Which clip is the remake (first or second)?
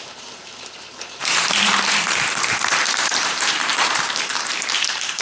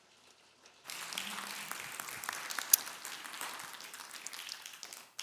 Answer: first